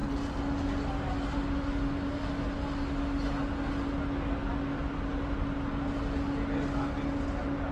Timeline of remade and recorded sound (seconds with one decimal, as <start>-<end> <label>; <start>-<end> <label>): 0.0-7.7 recorded